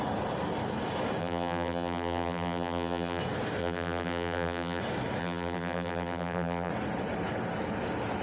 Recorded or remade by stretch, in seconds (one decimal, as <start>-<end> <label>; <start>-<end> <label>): 0.0-1.2 recorded; 1.2-3.2 remade; 3.2-3.6 recorded; 3.6-4.8 remade; 4.8-5.2 recorded; 5.2-6.7 remade; 6.7-8.2 recorded